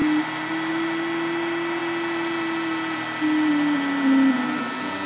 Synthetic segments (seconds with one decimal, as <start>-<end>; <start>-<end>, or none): none